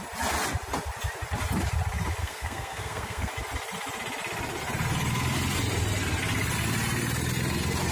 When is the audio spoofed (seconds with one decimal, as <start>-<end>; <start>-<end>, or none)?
2.2-3.3